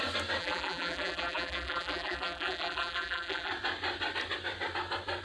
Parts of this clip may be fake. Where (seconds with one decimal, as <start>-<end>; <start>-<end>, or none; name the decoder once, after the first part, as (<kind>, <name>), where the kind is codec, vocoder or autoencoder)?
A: 0.4-3.5 (vocoder, BigVGAN v2)